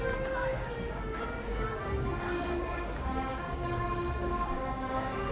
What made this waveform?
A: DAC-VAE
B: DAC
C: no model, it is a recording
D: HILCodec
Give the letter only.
B